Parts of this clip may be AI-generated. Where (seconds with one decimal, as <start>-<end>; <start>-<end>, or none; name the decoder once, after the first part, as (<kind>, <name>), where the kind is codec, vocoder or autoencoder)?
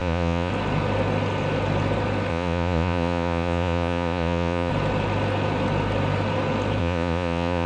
0.0-0.5 (vocoder, Vocos); 2.3-4.7; 6.8-7.7